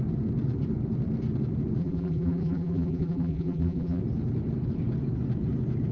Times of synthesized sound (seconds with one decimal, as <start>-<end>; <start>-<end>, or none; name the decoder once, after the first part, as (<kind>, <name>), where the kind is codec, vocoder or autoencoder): 1.8-4.0 (vocoder, BigVGAN v2)